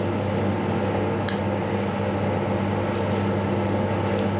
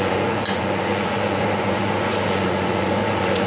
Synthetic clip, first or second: second